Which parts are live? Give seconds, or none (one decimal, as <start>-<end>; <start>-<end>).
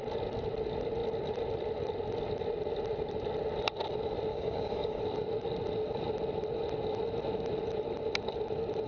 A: 0.0-4.3; 5.0-8.9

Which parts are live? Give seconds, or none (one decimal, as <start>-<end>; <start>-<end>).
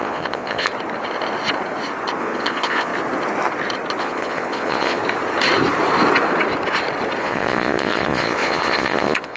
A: 0.7-2.2; 2.9-4.0; 5.0-7.2